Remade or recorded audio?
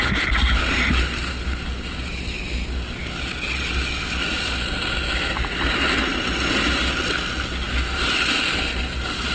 recorded